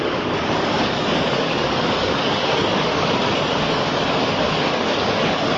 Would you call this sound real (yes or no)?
no